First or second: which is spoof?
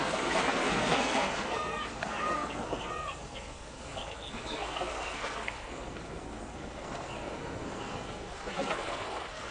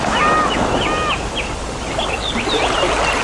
first